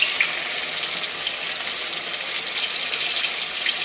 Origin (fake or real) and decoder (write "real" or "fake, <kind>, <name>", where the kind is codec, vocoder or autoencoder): real